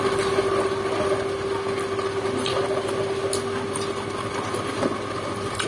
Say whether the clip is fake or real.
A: real